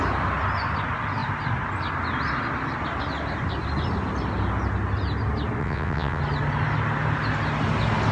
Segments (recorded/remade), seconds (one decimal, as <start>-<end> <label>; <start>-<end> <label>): 0.0-5.6 recorded; 5.6-6.2 remade; 6.2-8.1 recorded